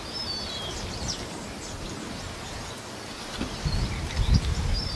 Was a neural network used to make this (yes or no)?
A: no